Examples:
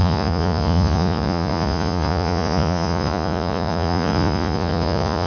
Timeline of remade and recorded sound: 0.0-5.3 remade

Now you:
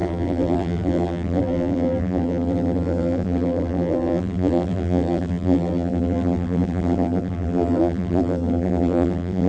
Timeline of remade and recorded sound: 0.0-9.5 remade

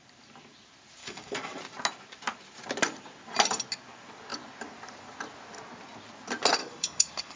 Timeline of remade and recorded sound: 0.0-1.0 recorded; 1.0-1.6 remade; 1.6-6.6 recorded; 6.6-7.4 remade

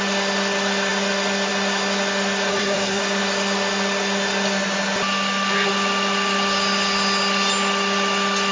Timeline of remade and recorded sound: 0.0-2.5 recorded; 2.5-3.0 remade; 3.0-8.5 recorded

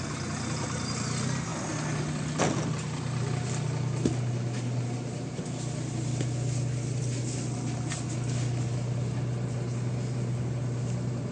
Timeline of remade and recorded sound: 0.0-11.3 recorded

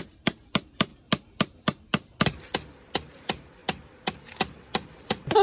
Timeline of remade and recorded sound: 0.0-0.9 remade; 0.9-3.1 recorded; 3.1-3.6 remade; 3.6-4.1 recorded; 4.1-5.4 remade

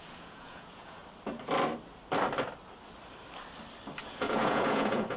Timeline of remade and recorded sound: 0.0-1.0 remade; 1.0-4.0 recorded; 4.0-5.2 remade